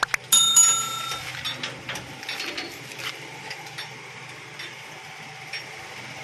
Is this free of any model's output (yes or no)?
yes